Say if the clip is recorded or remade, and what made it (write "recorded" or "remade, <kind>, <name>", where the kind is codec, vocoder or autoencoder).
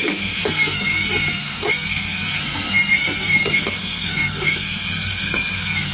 remade, codec, SNAC